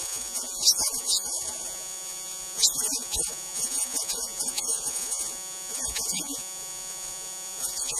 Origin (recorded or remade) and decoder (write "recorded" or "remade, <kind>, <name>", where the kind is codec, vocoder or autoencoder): remade, vocoder, Vocos